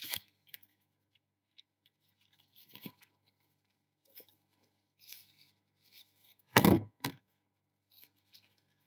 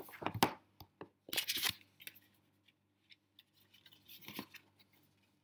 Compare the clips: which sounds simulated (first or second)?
first